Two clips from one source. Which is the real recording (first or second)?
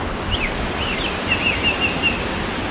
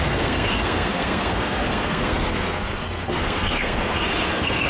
first